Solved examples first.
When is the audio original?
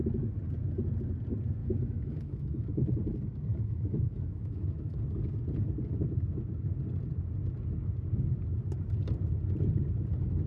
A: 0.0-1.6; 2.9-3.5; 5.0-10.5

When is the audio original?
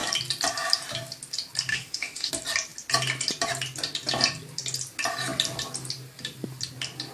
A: 0.0-1.7; 2.3-7.1